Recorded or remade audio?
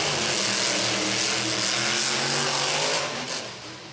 recorded